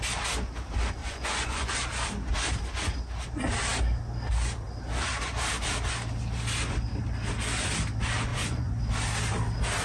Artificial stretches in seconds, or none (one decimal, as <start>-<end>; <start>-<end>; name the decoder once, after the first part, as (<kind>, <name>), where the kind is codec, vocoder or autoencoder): 1.0-1.7 (vocoder, Vocos); 8.3-8.8